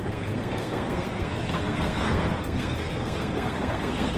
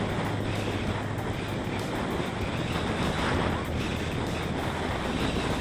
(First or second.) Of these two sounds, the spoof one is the first